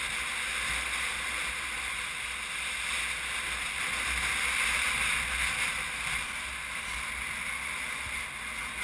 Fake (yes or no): no